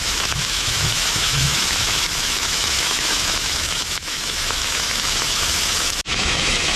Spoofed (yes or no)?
yes